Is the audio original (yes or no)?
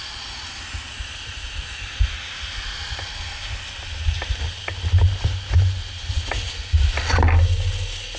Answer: yes